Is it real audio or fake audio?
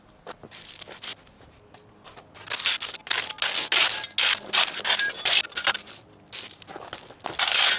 real